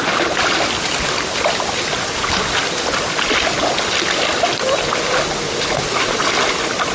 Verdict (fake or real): real